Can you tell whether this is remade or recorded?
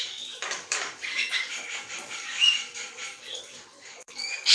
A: remade